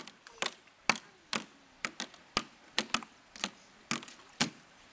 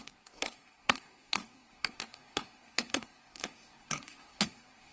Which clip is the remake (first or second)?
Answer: second